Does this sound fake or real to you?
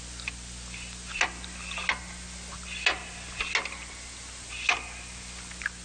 real